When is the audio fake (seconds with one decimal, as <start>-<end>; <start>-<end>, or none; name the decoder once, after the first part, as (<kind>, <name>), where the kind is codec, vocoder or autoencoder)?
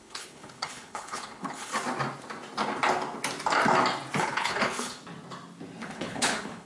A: 0.0-1.7 (codec, HILCodec); 4.2-5.0; 5.8-6.7